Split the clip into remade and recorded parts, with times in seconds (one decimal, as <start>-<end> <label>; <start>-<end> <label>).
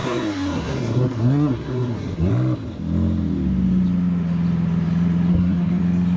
0.0-2.3 remade; 2.3-5.3 recorded; 5.3-5.8 remade; 5.8-6.2 recorded